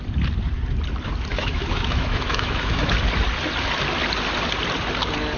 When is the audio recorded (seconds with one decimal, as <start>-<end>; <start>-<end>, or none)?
0.0-1.3; 2.9-5.4